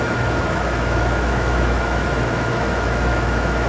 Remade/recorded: remade